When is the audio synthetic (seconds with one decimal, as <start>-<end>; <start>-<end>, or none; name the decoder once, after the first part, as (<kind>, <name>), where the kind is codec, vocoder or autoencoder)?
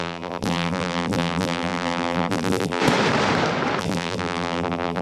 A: 0.0-2.8 (vocoder, BigVGAN v2); 3.8-5.0